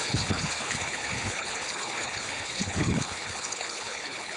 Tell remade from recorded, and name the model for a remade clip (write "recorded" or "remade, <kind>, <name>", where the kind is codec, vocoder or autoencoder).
remade, codec, HILCodec